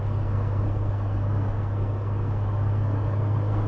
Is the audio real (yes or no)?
no